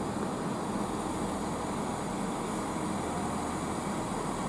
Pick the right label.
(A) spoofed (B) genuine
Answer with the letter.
B